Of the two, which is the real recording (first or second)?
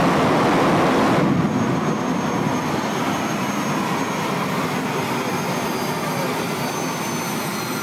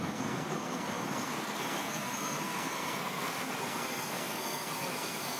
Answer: first